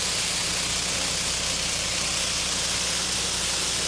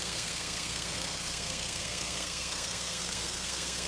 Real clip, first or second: first